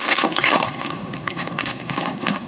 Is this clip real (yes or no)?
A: no